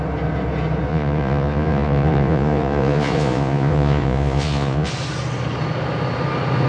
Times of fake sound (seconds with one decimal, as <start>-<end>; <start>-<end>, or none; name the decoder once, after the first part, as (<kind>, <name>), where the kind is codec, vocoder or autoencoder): 0.9-4.9 (vocoder, Vocos)